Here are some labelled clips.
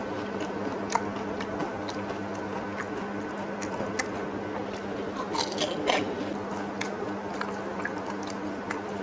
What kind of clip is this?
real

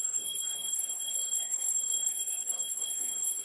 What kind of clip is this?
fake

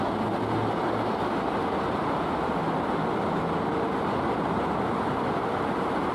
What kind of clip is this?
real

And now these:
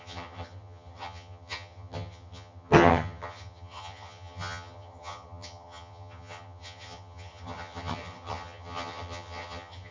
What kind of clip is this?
fake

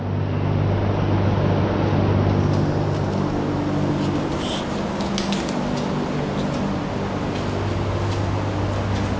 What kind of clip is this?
real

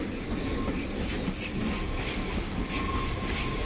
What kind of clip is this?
real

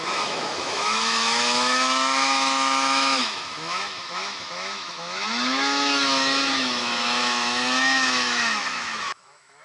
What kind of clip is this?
fake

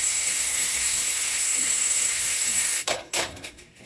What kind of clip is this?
fake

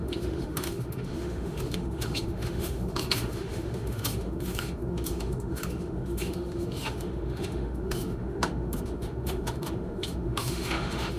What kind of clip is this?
fake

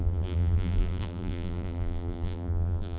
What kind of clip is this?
fake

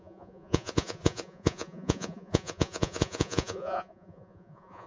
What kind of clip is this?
fake